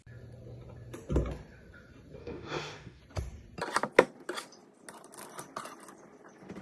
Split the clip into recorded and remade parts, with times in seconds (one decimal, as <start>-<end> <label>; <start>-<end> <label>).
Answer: 0.0-2.2 recorded; 2.2-3.0 remade; 3.0-6.6 recorded